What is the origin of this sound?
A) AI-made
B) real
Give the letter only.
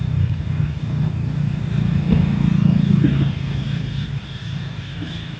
A